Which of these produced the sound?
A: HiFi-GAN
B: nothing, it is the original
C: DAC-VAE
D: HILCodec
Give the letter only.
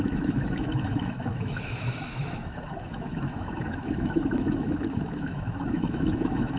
C